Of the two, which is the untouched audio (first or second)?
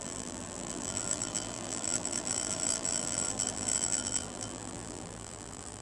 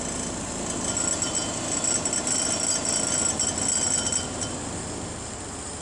second